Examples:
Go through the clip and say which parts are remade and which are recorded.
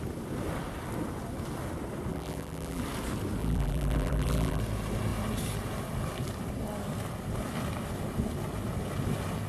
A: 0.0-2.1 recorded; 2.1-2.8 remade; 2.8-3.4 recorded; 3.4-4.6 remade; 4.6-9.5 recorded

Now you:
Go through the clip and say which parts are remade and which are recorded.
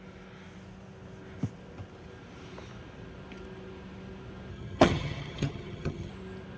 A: 0.0-4.5 recorded; 4.5-6.1 remade; 6.1-6.6 recorded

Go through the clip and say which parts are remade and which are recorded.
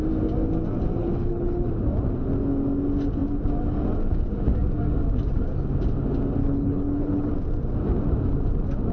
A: 0.0-1.0 recorded; 1.0-1.7 remade; 1.7-6.4 recorded; 6.4-7.3 remade; 7.3-8.9 recorded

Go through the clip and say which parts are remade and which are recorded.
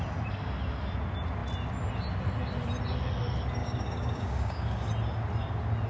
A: 0.0-3.6 recorded; 3.6-4.9 remade; 4.9-5.9 recorded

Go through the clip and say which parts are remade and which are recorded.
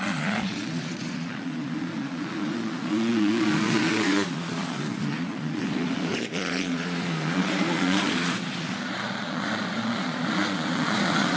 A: 0.0-11.4 remade